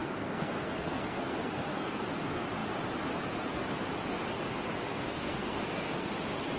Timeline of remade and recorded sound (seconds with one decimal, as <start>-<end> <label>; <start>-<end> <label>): 0.0-2.0 remade; 2.0-4.9 recorded; 4.9-6.1 remade; 6.1-6.6 recorded